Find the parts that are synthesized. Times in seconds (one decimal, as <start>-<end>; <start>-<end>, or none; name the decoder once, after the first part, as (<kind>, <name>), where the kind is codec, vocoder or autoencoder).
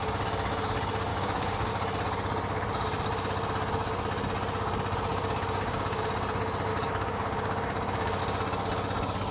1.1-1.7 (codec, DAC); 5.1-6.1; 6.7-8.2